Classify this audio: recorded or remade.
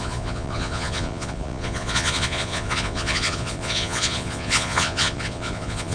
remade